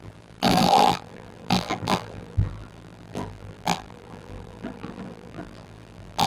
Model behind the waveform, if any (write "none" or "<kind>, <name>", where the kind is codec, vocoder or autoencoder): vocoder, BigVGAN v2